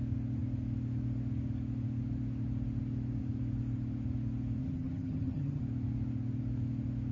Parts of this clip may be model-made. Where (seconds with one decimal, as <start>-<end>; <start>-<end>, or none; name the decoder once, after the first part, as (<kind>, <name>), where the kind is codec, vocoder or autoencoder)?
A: 4.6-5.6 (vocoder, HiFi-GAN)